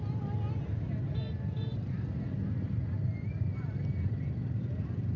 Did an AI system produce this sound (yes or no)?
no